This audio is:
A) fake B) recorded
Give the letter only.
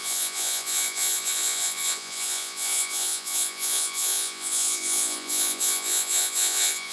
A